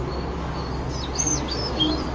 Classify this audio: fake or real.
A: real